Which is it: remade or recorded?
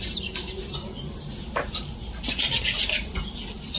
recorded